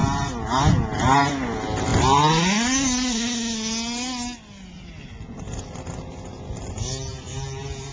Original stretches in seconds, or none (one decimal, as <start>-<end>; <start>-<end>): 0.0-7.9